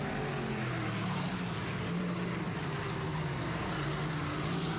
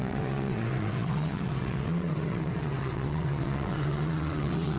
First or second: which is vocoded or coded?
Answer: second